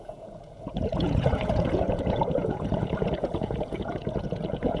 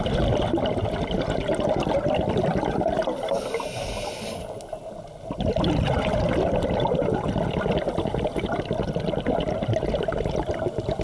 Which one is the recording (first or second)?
second